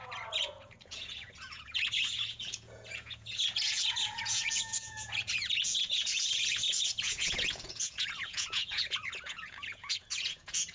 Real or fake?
fake